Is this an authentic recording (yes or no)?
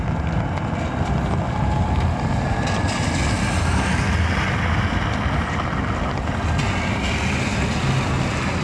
yes